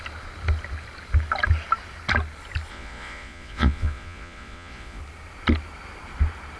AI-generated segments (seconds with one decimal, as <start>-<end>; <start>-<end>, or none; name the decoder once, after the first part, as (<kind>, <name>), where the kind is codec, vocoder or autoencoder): 2.7-5.0 (vocoder, Vocos)